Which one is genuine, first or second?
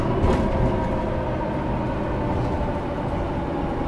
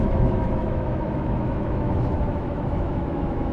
first